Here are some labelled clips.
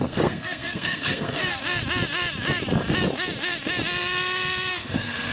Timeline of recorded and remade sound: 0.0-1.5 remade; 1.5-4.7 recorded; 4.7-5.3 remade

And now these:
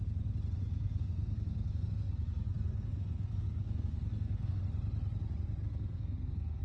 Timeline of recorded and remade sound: 0.0-0.6 recorded; 0.6-4.6 remade; 4.6-5.6 recorded; 5.6-6.6 remade

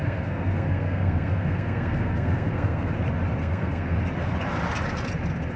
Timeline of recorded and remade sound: 0.0-2.9 remade; 2.9-3.4 recorded; 3.4-4.0 remade; 4.0-5.6 recorded

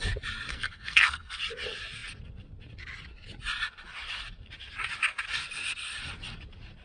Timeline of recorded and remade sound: 0.0-0.5 recorded; 0.5-1.4 remade; 1.4-6.8 recorded

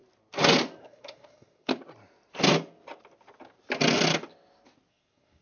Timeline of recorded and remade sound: 0.0-0.8 recorded; 0.8-1.7 remade; 1.7-4.9 recorded; 4.9-5.4 remade